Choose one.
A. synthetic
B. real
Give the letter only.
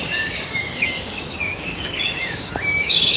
A